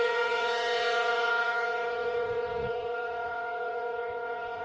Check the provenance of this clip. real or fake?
fake